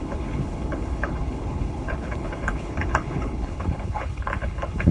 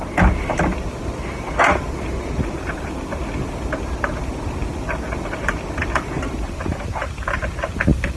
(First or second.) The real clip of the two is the second